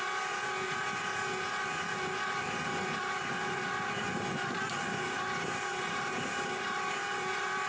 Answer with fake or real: real